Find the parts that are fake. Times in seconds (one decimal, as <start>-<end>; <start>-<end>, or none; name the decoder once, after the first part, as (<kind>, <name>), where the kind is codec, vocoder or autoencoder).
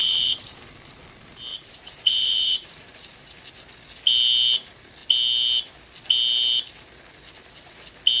0.0-0.7 (vocoder, BigVGAN v2); 1.5-3.4